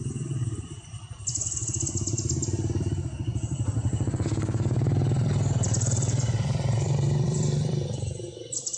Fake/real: fake